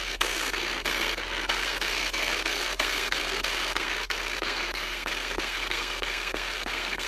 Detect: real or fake fake